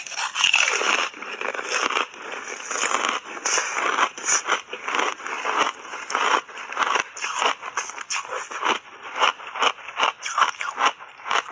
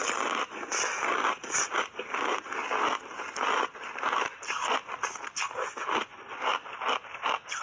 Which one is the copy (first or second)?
first